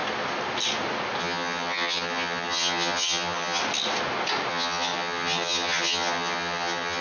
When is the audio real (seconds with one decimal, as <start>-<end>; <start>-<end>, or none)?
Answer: 0.0-1.2; 3.6-4.5